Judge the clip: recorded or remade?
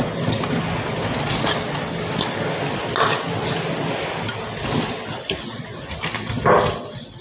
recorded